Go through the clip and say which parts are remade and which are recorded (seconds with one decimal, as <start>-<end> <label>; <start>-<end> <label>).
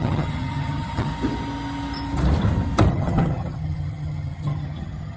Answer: 0.0-1.1 remade; 1.1-2.9 recorded; 2.9-5.2 remade